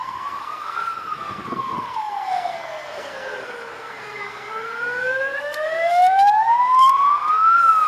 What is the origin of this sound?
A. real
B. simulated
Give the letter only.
B